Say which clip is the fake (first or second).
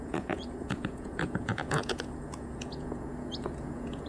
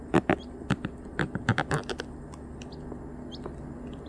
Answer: first